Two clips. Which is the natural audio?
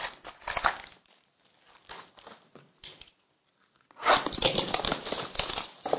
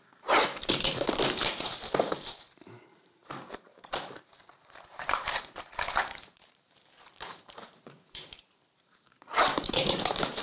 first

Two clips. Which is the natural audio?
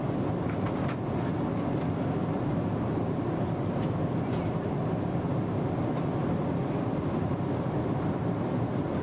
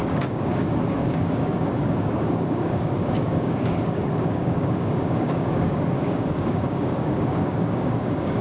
first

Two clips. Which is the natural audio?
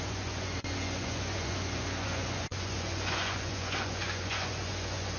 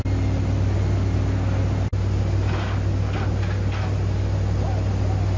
second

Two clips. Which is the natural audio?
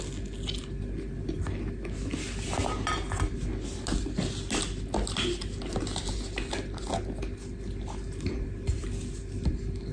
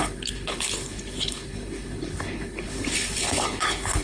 first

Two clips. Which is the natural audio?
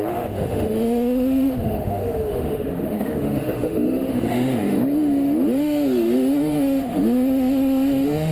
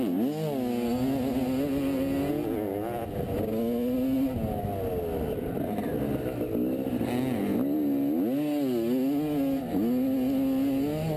second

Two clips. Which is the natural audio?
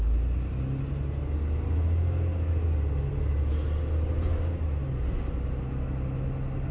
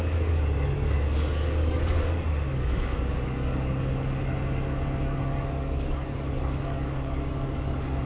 first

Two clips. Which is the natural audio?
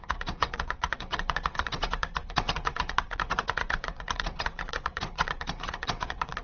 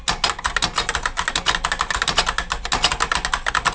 second